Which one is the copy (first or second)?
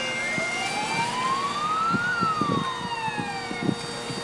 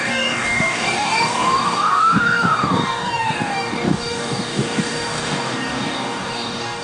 second